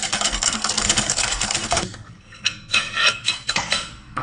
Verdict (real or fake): fake